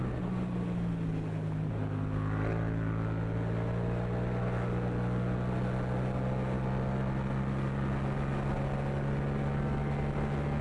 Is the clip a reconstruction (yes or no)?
no